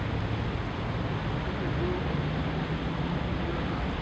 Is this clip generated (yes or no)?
no